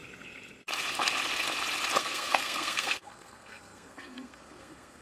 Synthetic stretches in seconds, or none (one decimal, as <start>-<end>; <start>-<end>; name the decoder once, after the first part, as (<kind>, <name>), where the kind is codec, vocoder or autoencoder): 2.0-5.0 (codec, SNAC)